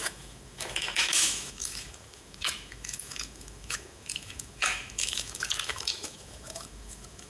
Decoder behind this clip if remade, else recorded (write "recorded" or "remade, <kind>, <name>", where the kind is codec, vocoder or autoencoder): remade, autoencoder, DAC-VAE